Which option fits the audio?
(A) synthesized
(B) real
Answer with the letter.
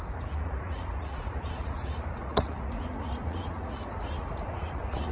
A